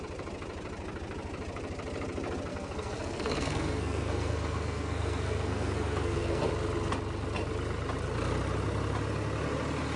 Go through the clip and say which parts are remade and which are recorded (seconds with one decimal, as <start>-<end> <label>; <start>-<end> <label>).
0.0-2.5 recorded; 2.5-6.5 remade; 6.5-10.0 recorded